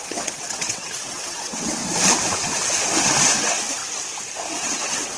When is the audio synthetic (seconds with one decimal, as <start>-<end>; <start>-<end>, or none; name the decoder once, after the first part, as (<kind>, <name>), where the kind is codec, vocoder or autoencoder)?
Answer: 0.0-1.8 (vocoder, WaveNeXt); 3.3-3.8; 4.6-5.2